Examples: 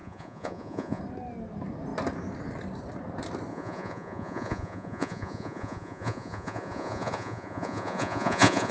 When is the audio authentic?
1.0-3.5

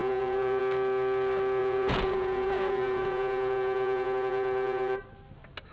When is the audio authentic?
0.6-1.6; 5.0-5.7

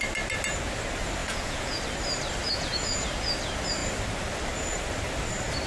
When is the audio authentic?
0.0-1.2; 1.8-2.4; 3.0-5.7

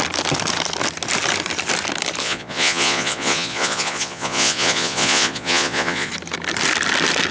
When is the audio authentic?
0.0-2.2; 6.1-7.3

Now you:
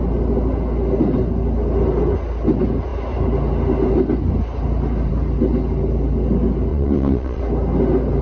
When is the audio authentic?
0.0-6.7; 7.4-8.2

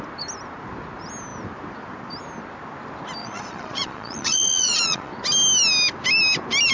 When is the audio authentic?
0.0-3.2; 5.1-6.7